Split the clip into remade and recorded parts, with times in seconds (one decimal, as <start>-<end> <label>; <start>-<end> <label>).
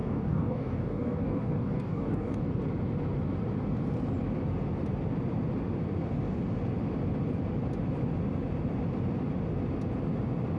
0.0-2.4 remade; 2.4-10.6 recorded